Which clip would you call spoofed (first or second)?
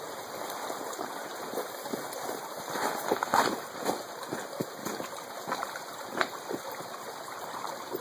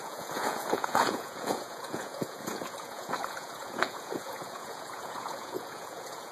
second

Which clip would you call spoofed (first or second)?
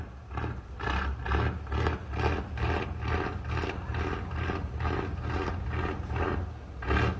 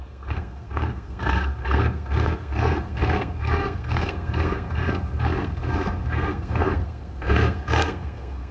second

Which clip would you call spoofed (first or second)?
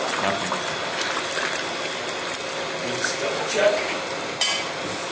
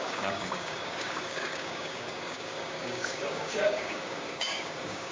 second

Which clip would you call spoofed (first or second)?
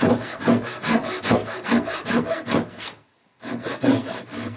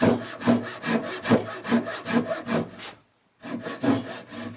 first